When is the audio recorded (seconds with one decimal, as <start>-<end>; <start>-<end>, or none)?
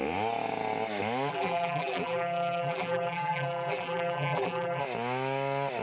0.0-1.3; 4.8-5.8